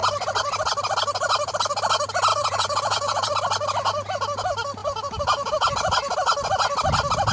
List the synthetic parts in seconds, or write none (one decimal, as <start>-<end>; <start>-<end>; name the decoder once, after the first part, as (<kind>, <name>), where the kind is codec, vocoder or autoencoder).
2.3-3.3 (vocoder, Vocos); 4.8-5.7